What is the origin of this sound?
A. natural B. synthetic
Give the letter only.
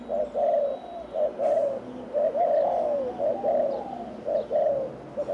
A